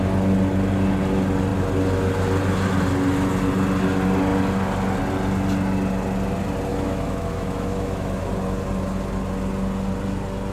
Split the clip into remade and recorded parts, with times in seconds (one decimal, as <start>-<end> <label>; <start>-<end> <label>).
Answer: 0.0-6.7 recorded; 6.7-8.3 remade; 8.3-10.5 recorded